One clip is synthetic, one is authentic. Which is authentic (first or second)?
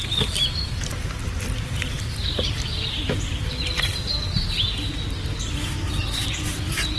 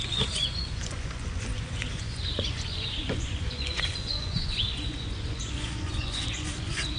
first